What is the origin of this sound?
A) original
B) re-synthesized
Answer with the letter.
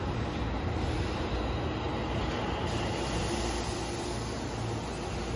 A